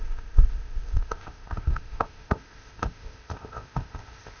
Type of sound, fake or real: fake